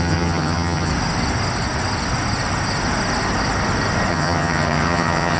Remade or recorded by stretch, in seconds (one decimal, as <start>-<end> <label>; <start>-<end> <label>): 0.0-0.9 remade; 0.9-4.1 recorded; 4.1-5.4 remade